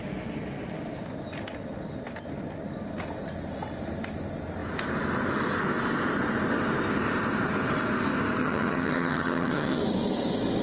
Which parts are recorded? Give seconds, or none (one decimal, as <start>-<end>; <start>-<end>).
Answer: 0.0-8.4; 9.8-10.6